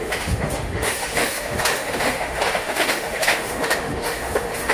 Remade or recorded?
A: remade